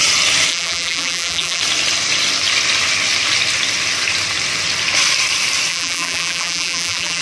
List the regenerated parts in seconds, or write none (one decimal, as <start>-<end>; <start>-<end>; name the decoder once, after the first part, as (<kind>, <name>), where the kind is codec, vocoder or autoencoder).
0.5-1.6 (vocoder, BigVGAN v2); 5.7-7.2